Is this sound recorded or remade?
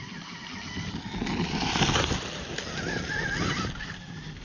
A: recorded